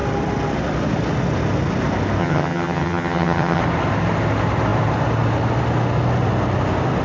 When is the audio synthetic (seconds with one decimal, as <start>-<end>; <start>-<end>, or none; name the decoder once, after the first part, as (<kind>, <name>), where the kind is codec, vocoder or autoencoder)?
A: 2.2-3.6 (vocoder, HiFi-GAN)